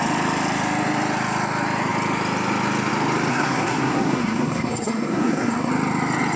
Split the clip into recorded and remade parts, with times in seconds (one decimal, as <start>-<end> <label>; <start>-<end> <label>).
0.0-3.3 recorded; 3.3-5.7 remade; 5.7-6.4 recorded